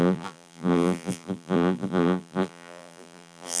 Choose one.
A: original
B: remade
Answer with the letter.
B